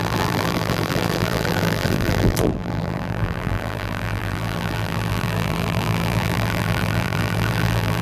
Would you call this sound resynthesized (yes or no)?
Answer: yes